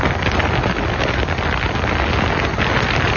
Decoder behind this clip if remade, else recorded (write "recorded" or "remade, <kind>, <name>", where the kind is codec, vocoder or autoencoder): recorded